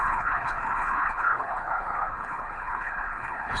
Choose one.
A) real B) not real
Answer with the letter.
B